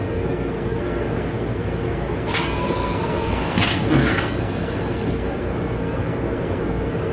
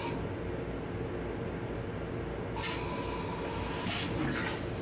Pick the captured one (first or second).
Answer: second